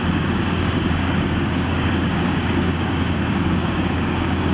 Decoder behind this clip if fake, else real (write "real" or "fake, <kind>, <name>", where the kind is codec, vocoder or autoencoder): fake, codec, DAC